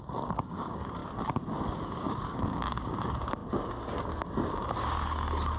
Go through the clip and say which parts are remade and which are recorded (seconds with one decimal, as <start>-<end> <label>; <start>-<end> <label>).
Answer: 0.0-1.0 remade; 1.0-1.8 recorded; 1.8-5.6 remade